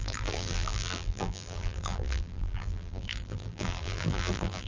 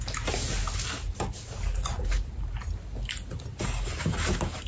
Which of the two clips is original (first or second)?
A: second